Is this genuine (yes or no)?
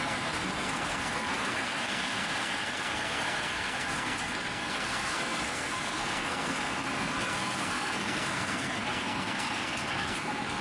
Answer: no